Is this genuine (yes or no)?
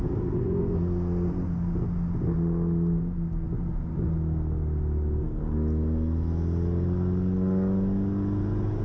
yes